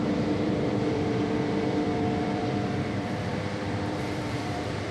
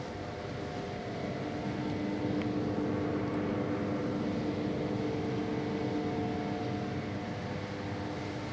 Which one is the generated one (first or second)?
first